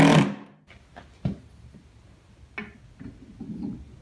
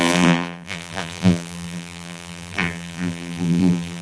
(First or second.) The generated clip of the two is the second